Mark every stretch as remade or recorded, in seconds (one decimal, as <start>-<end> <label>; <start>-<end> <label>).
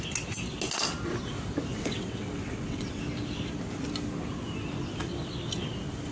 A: 0.0-1.7 recorded; 1.7-3.0 remade; 3.0-6.1 recorded